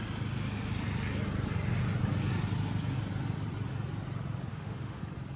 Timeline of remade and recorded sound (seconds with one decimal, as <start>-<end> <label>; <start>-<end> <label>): 0.0-4.5 recorded; 4.5-5.0 remade; 5.0-5.4 recorded